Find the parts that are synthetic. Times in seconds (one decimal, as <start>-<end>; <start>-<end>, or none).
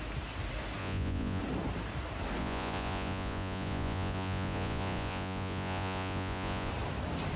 0.8-1.4; 2.4-6.7